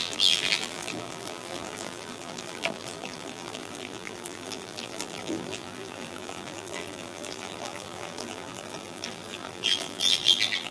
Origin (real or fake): fake